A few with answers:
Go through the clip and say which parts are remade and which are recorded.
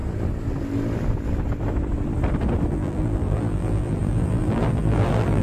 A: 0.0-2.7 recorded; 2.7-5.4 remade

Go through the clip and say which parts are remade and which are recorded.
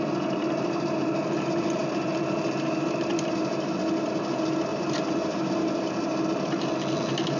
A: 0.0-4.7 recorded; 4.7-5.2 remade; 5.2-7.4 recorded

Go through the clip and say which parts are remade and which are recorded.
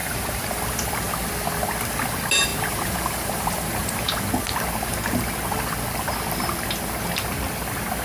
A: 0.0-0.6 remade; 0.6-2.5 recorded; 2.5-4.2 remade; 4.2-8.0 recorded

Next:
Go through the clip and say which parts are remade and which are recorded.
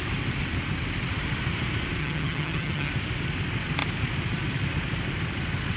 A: 0.0-2.0 recorded; 2.0-2.9 remade; 2.9-5.8 recorded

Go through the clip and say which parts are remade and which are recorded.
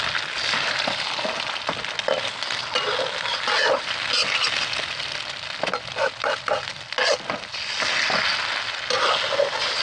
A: 0.0-9.8 recorded